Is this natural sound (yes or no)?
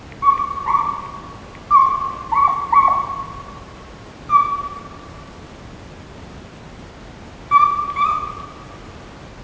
yes